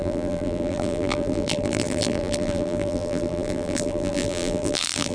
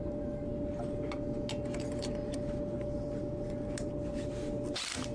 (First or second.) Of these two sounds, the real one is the second